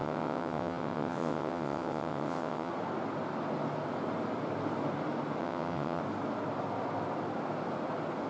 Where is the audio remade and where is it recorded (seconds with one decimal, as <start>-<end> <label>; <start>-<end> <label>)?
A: 0.0-2.7 remade; 2.7-5.4 recorded; 5.4-6.0 remade; 6.0-8.3 recorded